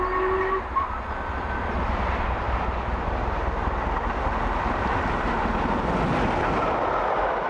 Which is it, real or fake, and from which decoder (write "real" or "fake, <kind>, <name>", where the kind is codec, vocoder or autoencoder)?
real